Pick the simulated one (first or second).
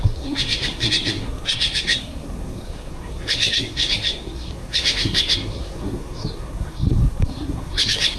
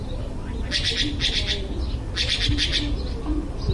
first